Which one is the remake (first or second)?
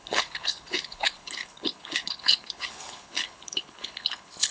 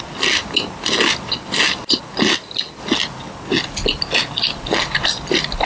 first